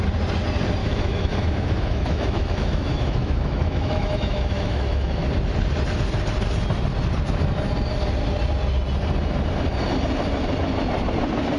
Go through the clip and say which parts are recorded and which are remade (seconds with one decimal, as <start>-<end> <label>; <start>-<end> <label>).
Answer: 0.0-0.8 recorded; 0.8-5.3 remade; 5.3-11.6 recorded